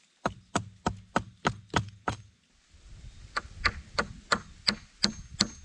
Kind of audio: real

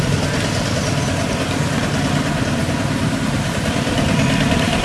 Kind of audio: real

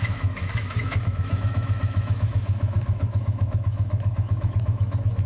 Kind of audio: fake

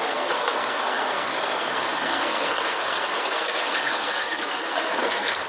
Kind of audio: fake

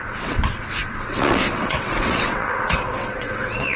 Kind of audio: fake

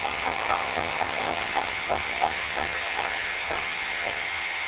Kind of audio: fake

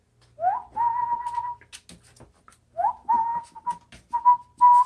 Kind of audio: real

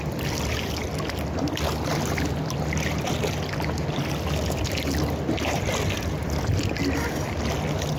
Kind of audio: real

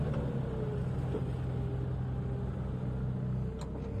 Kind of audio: real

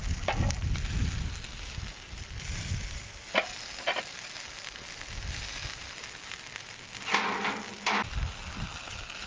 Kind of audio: real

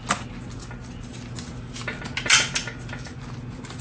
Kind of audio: real